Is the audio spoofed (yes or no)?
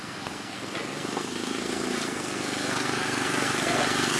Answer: yes